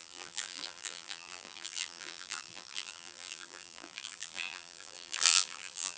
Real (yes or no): no